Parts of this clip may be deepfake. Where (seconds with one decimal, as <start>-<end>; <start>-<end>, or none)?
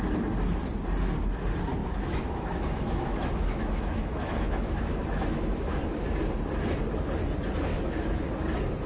1.8-5.8; 7.7-8.3